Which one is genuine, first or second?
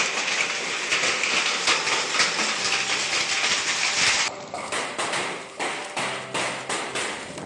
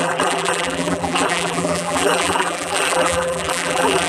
first